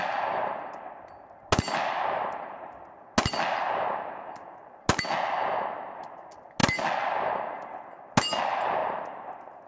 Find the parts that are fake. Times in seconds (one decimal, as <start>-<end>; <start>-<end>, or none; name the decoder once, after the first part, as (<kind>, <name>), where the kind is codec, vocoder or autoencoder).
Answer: none